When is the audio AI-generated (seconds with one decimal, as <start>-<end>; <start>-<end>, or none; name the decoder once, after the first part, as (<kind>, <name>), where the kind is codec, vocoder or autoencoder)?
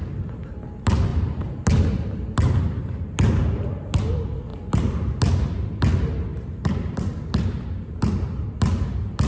6.3-8.0 (vocoder, BigVGAN v2)